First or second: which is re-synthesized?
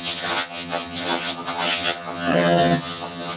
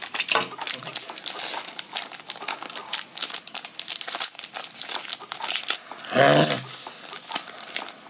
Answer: first